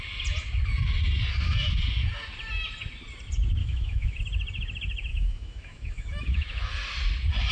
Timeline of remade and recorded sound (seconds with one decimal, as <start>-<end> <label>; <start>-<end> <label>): 0.0-3.6 recorded; 3.6-4.2 remade; 4.2-5.1 recorded; 5.1-6.7 remade; 6.7-7.5 recorded